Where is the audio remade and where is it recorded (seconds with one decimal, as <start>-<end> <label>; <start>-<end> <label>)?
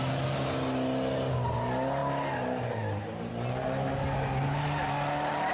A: 0.0-5.5 recorded